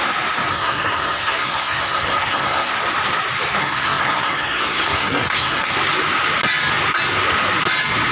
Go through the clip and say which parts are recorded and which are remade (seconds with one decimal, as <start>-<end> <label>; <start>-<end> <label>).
0.0-0.5 recorded; 0.5-2.7 remade; 2.7-3.6 recorded; 3.6-5.7 remade; 5.7-8.1 recorded